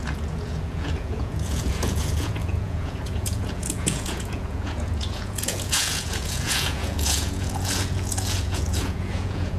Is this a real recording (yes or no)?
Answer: no